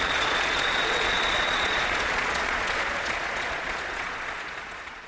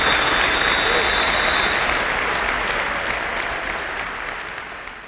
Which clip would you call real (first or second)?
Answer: second